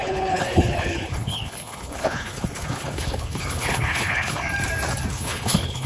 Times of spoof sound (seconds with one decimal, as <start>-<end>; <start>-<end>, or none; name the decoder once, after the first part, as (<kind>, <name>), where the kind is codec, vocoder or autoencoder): 0.0-4.4 (codec, HILCodec); 5.1-5.9